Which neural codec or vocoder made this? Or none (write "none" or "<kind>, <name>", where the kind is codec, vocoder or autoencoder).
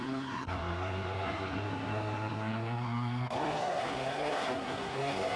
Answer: codec, SNAC